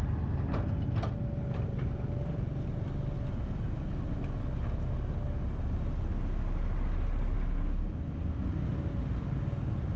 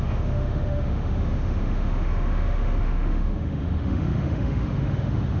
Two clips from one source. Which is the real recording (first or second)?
first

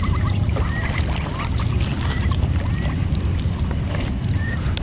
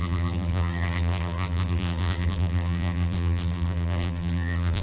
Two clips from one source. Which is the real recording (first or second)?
first